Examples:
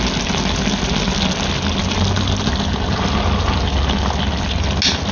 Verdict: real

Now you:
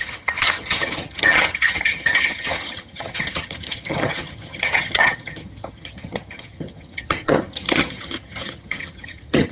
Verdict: fake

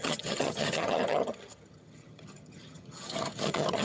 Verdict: fake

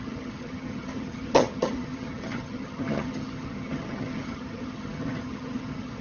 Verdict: fake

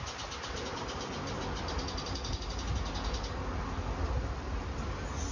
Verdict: real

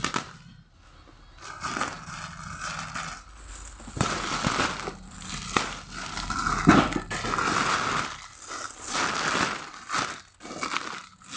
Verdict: real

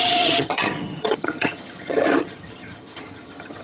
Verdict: fake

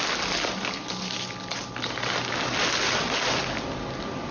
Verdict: real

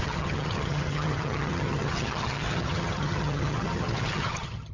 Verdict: fake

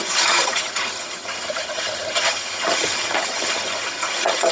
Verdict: fake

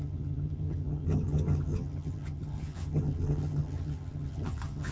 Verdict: fake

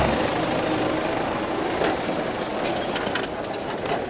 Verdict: real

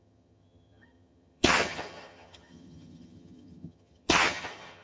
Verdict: fake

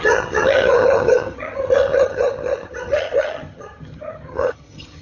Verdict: fake